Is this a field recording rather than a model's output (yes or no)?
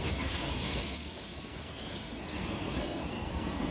no